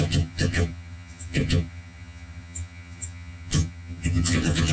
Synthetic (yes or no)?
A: yes